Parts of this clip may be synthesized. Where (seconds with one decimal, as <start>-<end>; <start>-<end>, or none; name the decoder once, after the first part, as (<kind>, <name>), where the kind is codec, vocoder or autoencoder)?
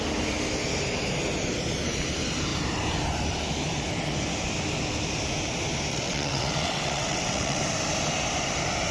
5.9-7.6 (vocoder, WaveNeXt)